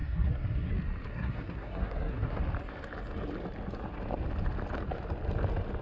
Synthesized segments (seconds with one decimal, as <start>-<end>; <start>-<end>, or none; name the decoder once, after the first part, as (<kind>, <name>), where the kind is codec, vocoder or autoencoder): 0.0-0.7 (codec, SNAC); 1.1-2.4